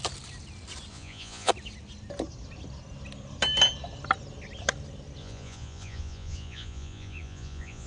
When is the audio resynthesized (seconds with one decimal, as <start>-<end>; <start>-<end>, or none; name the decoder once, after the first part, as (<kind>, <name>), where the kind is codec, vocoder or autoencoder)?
0.9-1.5 (vocoder, Vocos); 5.2-7.9

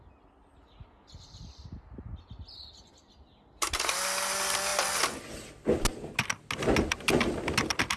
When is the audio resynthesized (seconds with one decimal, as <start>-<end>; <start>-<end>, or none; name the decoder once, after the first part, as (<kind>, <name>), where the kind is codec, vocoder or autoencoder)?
none

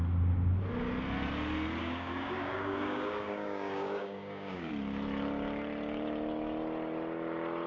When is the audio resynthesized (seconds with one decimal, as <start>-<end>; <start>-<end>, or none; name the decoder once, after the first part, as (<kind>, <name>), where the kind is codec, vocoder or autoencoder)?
1.8-4.7 (codec, DAC)

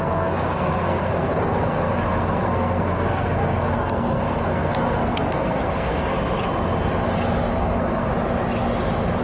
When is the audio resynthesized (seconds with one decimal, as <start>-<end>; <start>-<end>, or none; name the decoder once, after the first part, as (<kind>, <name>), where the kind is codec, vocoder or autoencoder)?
0.0-6.1 (codec, SNAC); 7.5-8.1

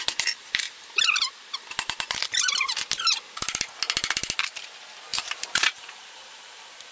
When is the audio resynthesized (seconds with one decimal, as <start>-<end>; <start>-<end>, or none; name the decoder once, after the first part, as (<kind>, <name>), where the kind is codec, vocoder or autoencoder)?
0.0-0.9 (vocoder, BigVGAN v2); 5.1-6.9

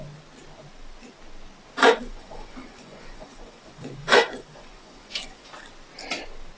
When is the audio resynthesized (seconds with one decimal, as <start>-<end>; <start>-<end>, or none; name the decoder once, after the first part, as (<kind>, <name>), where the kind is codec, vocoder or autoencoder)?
1.8-5.5 (vocoder, Vocos)